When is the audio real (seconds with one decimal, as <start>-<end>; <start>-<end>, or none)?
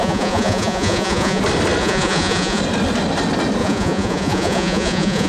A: 1.4-1.8; 2.6-3.6